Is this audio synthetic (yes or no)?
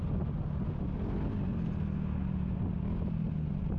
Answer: no